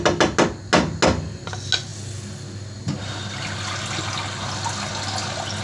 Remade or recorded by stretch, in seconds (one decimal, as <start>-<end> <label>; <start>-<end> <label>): 0.0-5.6 recorded